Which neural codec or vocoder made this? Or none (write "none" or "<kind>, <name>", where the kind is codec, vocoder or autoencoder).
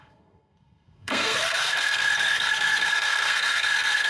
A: codec, SNAC